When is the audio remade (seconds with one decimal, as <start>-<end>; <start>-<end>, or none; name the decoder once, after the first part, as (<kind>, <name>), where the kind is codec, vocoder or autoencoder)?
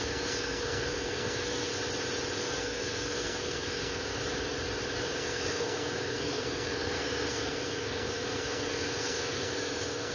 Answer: 0.0-1.7 (codec, SNAC); 2.4-4.2; 5.0-10.1